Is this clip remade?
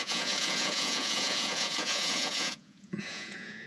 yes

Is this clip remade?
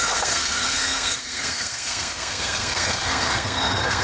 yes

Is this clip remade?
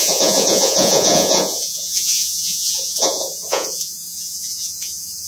yes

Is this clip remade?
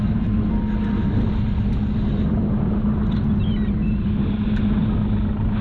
no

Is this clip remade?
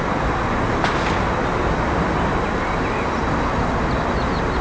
no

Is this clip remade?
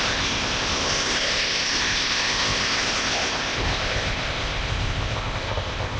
yes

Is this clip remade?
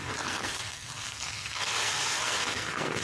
yes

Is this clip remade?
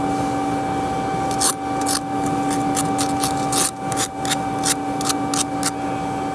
no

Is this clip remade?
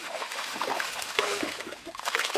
yes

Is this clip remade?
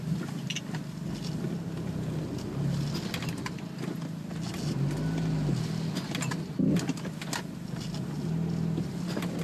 no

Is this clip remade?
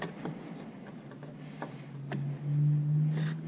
no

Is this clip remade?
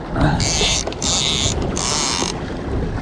no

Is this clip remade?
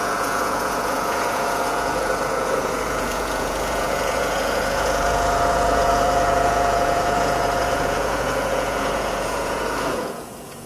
yes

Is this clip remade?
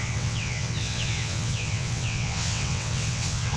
yes